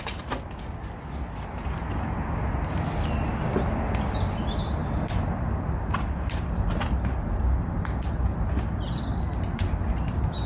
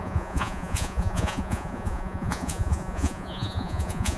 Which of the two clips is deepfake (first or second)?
second